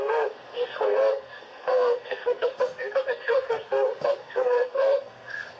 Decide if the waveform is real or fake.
fake